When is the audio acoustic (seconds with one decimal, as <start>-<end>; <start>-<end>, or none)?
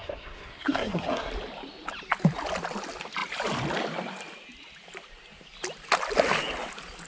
1.3-7.1